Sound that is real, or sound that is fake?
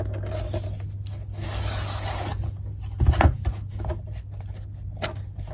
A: real